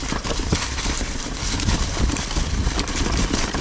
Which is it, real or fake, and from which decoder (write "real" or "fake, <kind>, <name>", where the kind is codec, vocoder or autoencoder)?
real